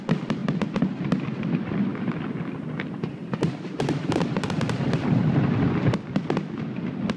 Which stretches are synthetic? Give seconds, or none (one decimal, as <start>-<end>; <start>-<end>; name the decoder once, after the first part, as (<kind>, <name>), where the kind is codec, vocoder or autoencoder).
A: none

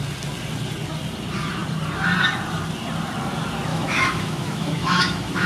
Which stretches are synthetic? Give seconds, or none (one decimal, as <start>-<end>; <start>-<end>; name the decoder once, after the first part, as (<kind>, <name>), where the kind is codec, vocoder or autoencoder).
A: 3.7-5.5 (autoencoder, DAC-VAE)

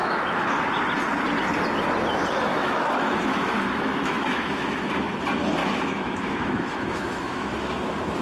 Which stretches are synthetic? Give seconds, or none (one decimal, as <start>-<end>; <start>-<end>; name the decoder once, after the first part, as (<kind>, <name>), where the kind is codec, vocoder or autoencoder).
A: 0.0-0.5 (autoencoder, DAC-VAE); 2.5-4.9; 5.6-7.5

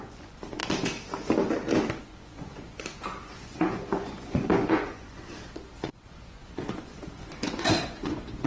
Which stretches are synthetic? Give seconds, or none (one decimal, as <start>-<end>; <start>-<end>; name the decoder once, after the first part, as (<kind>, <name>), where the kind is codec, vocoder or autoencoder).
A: 0.0-0.6 (vocoder, Vocos); 2.0-8.5

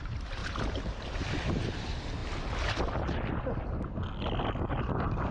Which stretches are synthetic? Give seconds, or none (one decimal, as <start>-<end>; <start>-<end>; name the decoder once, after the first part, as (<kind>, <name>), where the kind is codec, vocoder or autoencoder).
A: 0.4-1.7 (vocoder, BigVGAN v2)

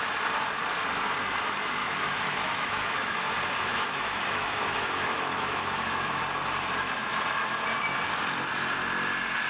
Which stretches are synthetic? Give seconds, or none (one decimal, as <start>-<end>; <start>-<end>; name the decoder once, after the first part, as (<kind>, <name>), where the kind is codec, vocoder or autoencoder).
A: 1.8-3.3 (autoencoder, DAC-VAE); 3.7-6.2

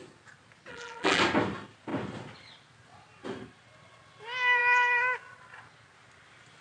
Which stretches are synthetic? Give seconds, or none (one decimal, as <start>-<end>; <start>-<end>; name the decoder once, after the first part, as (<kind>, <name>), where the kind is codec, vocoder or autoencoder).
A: 0.7-1.2 (vocoder, BigVGAN v2)